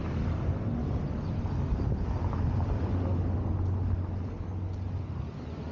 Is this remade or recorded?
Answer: recorded